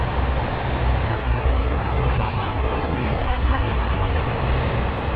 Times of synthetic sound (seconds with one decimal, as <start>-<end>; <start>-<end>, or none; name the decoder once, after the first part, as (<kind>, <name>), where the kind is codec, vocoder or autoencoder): 1.1-4.2 (codec, SNAC)